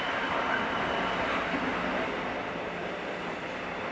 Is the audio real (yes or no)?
yes